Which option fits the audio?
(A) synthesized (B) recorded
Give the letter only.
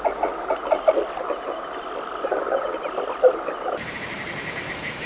B